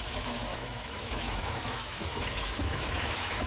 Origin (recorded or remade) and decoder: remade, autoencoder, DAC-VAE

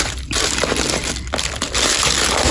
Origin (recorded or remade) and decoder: recorded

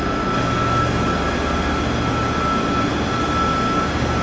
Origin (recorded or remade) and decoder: recorded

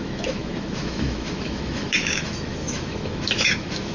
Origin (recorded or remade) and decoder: remade, autoencoder, DAC-VAE